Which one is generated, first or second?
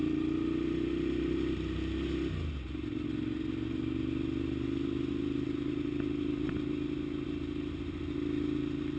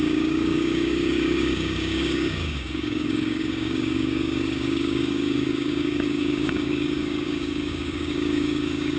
second